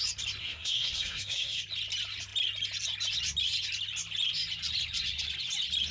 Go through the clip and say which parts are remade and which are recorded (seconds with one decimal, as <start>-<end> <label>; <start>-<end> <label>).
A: 0.0-0.4 recorded; 0.4-1.6 remade; 1.6-5.9 recorded